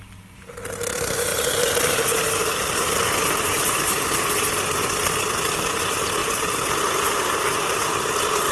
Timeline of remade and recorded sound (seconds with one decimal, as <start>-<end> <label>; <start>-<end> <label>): 0.0-8.5 recorded